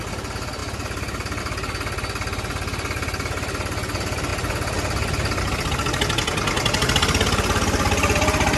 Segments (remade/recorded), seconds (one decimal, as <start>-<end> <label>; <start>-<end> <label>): 0.0-8.6 recorded